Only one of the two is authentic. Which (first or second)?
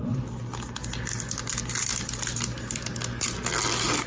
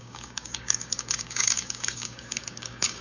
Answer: first